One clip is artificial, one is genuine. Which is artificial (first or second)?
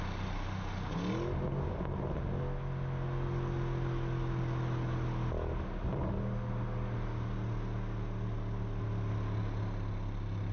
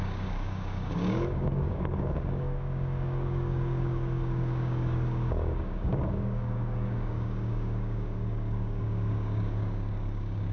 second